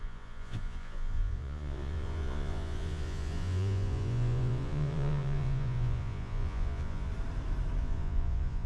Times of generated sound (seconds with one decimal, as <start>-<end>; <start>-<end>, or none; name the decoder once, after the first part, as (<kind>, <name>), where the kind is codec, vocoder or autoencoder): 0.0-7.1 (vocoder, Vocos); 7.8-8.7